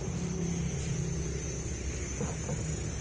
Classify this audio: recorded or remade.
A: recorded